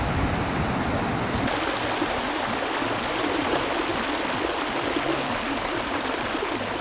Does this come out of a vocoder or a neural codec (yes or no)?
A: no